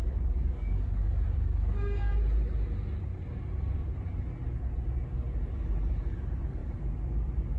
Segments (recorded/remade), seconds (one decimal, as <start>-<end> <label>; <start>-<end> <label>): 0.0-2.1 remade; 2.1-7.6 recorded